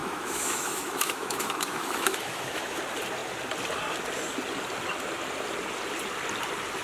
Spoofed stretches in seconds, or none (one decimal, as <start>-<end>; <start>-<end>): 0.0-2.8